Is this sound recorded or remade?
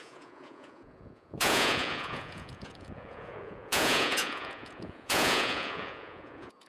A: remade